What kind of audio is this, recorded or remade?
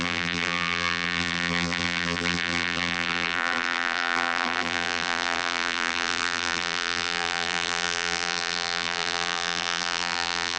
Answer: remade